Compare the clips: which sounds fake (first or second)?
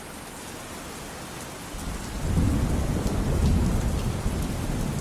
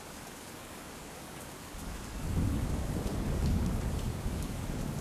second